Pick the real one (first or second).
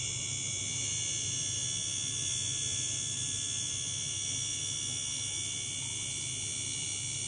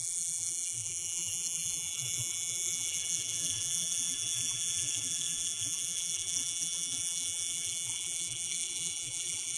first